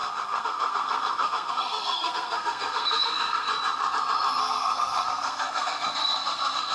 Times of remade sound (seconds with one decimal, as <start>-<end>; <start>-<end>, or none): 0.0-3.5; 4.4-6.7